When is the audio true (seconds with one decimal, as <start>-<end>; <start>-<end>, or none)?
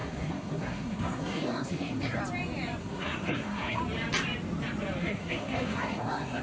2.2-2.8; 3.8-5.0